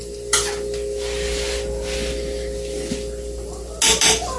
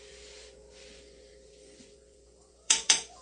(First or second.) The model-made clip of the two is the second